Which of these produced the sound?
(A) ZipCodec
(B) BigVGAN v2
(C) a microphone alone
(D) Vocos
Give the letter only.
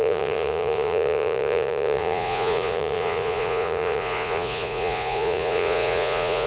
D